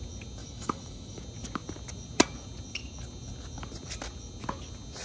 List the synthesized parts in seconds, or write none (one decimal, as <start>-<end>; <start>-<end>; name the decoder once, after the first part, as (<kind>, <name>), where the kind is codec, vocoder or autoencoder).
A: 0.4-1.2 (autoencoder, DAC-VAE)

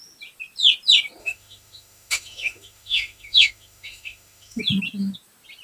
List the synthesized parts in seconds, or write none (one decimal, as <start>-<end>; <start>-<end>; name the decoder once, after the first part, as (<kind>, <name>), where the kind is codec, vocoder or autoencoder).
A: 1.2-4.6 (autoencoder, DAC-VAE)

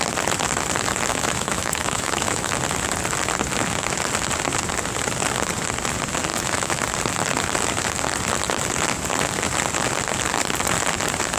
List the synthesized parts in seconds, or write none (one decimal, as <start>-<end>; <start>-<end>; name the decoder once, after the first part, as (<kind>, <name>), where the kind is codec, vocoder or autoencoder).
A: 1.1-2.5 (autoencoder, DAC-VAE); 6.3-6.8

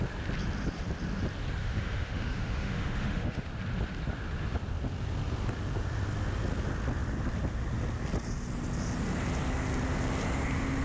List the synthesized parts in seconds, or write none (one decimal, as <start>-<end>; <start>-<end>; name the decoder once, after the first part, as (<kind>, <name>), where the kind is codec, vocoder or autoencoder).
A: 1.6-3.5 (autoencoder, DAC-VAE)

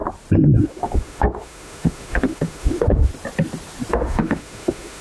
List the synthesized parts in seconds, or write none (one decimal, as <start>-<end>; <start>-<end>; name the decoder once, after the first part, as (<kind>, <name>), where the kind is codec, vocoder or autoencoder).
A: 0.6-3.1 (autoencoder, DAC-VAE); 3.9-5.0

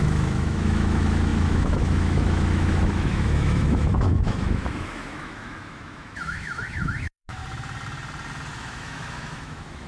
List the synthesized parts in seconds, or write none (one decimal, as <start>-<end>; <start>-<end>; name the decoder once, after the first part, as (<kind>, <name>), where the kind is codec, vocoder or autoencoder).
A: 0.0-7.4 (autoencoder, DAC-VAE); 8.5-9.9

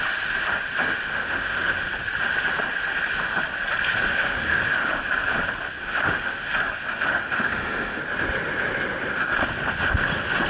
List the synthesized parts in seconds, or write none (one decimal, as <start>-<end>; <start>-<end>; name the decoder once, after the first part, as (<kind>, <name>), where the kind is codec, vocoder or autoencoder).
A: 1.1-1.8 (autoencoder, DAC-VAE); 4.1-5.1; 5.8-6.4; 7.0-8.0

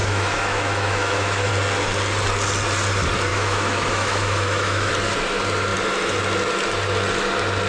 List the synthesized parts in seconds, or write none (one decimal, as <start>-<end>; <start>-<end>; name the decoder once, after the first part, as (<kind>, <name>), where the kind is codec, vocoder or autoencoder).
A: 0.0-1.5 (autoencoder, DAC-VAE); 3.3-4.9